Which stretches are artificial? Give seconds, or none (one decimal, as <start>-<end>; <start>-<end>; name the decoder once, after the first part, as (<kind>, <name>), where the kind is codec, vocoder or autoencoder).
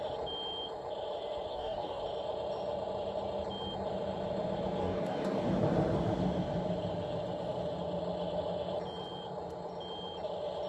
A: 1.5-2.0 (codec, DAC); 4.8-5.4